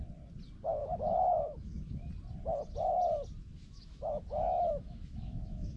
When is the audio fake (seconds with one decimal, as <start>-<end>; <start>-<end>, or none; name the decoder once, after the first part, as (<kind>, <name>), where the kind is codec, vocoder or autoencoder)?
0.8-2.1 (autoencoder, DAC-VAE); 3.4-5.8

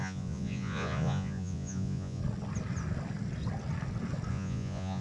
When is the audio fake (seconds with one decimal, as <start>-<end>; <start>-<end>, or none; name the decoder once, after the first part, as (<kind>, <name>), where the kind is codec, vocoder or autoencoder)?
0.0-2.2 (vocoder, Vocos); 4.3-5.0

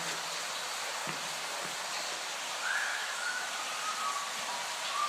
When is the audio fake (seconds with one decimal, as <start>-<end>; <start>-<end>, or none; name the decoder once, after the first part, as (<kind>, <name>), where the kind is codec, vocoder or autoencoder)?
2.9-3.5 (autoencoder, DAC-VAE)

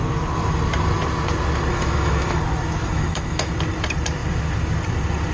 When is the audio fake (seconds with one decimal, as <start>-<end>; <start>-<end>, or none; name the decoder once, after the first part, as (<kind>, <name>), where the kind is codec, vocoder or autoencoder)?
1.7-2.4 (autoencoder, DAC-VAE); 2.8-3.5

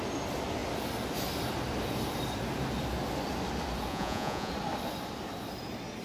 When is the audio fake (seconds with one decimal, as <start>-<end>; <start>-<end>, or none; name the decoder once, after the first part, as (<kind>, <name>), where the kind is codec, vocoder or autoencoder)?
3.9-4.5 (vocoder, Vocos)

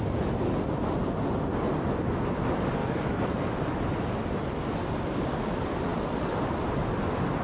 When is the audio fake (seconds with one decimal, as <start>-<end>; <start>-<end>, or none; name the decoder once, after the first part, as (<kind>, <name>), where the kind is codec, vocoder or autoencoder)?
2.8-3.8 (codec, DAC)

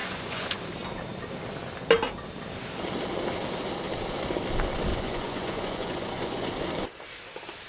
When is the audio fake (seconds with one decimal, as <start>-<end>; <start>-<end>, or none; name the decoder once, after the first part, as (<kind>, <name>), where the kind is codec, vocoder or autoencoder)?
0.0-0.6 (vocoder, Vocos); 4.9-6.5